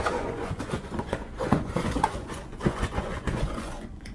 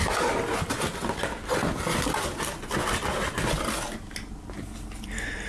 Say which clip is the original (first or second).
second